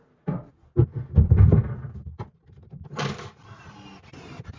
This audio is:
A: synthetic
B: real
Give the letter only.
B